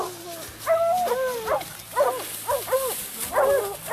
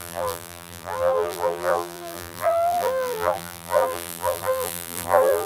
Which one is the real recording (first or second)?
first